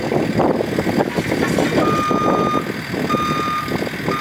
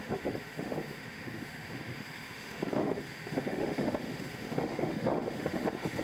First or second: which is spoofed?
second